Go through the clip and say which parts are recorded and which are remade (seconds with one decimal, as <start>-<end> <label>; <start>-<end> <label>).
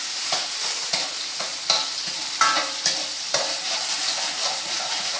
0.0-1.5 remade; 1.5-4.6 recorded; 4.6-5.2 remade